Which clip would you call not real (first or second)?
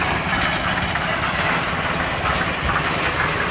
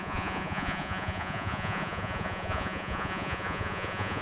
second